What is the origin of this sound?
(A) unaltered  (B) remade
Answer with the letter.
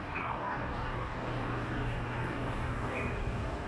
B